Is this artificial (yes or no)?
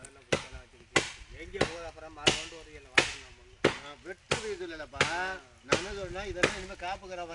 no